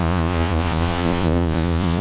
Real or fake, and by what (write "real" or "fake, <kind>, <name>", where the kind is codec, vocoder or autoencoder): fake, vocoder, Vocos